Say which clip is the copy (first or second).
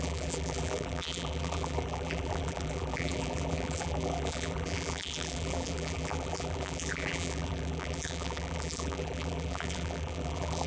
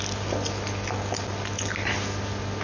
first